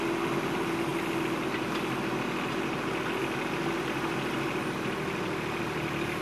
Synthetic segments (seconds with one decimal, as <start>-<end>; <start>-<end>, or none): none